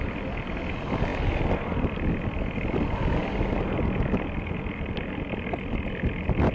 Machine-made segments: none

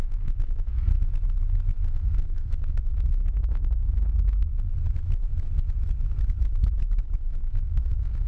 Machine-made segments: 0.0-0.9 (codec, SNAC); 1.8-4.7; 7.3-8.3

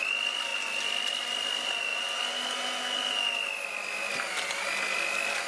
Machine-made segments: none

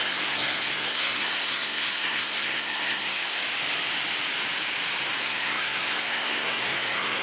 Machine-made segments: 0.0-3.4 (codec, SNAC); 5.2-7.2

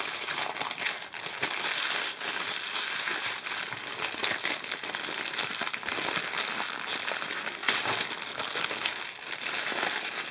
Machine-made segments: none

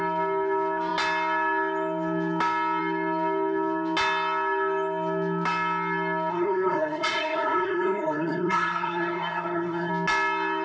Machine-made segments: 6.3-9.9 (codec, SNAC)

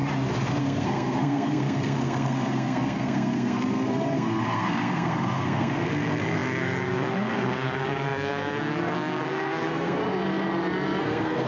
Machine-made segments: 0.6-10.0 (codec, SNAC); 11.0-11.5

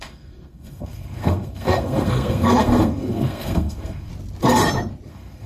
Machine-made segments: 0.0-4.1 (codec, SNAC); 5.1-5.5